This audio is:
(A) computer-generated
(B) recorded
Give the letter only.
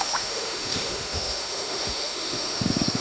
A